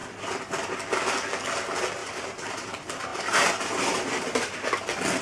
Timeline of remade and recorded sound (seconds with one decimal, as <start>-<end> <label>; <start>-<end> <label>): 0.0-2.0 recorded; 2.0-2.7 remade; 2.7-3.1 recorded; 3.1-4.8 remade; 4.8-5.2 recorded